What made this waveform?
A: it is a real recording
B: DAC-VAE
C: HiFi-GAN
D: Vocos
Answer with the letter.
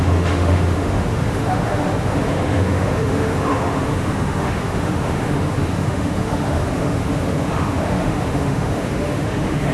B